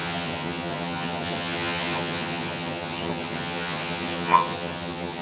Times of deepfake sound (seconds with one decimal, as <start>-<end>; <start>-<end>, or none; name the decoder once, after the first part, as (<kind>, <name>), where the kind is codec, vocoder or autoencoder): 0.0-5.2 (vocoder, HiFi-GAN)